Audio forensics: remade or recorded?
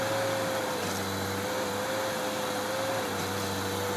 recorded